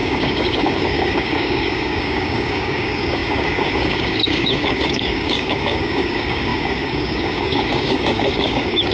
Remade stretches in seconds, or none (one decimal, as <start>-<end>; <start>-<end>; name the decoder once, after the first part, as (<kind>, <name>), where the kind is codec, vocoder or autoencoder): 0.0-8.9 (codec, DAC)